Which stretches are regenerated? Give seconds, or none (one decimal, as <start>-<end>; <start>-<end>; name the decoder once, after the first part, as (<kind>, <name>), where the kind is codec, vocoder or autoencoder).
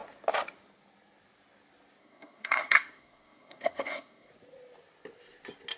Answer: 2.0-4.3 (codec, SNAC)